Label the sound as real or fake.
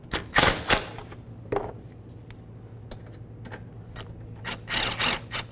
real